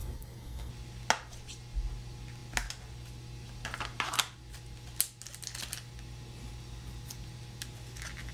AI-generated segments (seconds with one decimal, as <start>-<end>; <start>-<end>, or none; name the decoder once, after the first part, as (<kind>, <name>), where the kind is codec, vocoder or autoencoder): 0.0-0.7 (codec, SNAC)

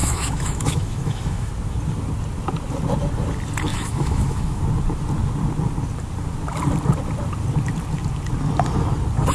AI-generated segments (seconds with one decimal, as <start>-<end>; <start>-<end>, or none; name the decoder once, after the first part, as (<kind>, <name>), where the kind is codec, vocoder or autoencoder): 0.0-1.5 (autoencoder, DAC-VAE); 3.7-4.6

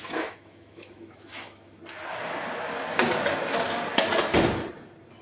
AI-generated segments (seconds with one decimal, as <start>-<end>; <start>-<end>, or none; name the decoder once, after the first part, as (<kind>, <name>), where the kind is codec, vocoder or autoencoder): 0.0-1.8 (autoencoder, DAC-VAE)

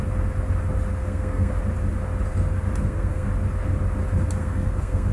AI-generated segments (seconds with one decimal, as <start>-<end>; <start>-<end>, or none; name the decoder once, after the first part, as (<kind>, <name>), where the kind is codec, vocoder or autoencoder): 1.0-1.5 (codec, SNAC); 2.8-3.3; 4.4-5.1